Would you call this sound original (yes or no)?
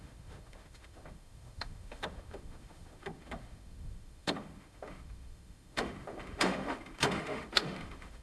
no